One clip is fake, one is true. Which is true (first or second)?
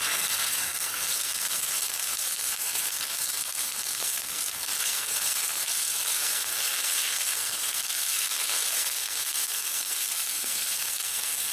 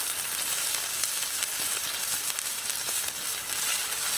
second